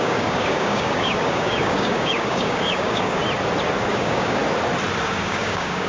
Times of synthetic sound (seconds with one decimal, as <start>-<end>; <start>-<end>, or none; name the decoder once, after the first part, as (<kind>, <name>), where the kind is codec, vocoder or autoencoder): 0.0-3.2 (codec, DAC); 3.9-4.4; 5.0-5.9